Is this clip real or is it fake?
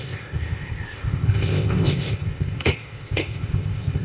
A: fake